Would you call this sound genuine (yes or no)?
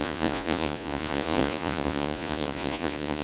no